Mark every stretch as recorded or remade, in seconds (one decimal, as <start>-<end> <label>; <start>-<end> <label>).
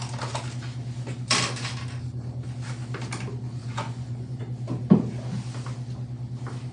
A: 0.0-3.6 recorded; 3.6-4.4 remade; 4.4-6.7 recorded